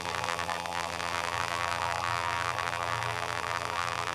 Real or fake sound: fake